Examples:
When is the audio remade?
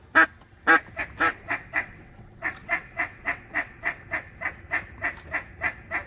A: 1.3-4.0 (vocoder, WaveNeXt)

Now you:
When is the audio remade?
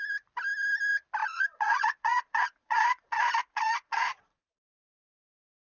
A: 1.2-4.4 (vocoder, Vocos)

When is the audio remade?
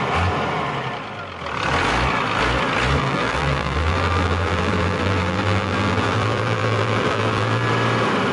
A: 3.0-7.7 (vocoder, BigVGAN v2)